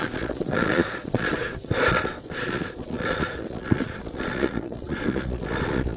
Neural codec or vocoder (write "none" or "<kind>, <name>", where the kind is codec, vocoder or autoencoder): vocoder, Vocos